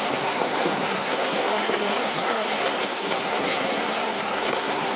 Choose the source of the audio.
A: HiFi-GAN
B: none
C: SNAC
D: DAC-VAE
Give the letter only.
C